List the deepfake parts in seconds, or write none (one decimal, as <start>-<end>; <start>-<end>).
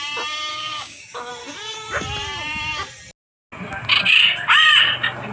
0.5-1.3